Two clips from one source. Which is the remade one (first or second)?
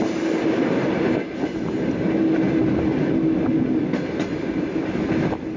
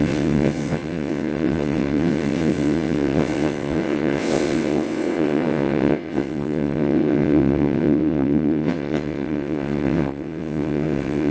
second